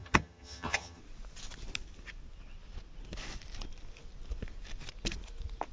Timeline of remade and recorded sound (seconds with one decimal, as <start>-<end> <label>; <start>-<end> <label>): 0.0-1.0 remade; 1.0-5.7 recorded